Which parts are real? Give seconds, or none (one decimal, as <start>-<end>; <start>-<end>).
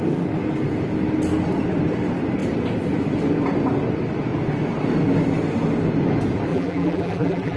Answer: 0.0-6.5